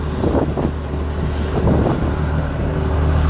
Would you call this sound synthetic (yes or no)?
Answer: no